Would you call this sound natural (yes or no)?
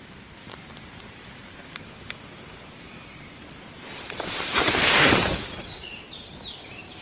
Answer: no